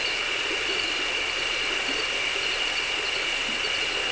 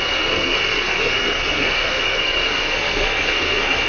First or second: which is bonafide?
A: first